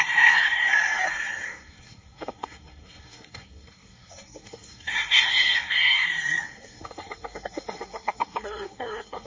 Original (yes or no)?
no